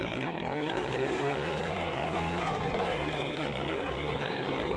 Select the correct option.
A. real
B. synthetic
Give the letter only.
B